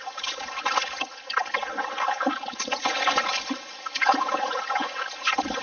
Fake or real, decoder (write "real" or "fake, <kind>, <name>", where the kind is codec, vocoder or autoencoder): fake, codec, HILCodec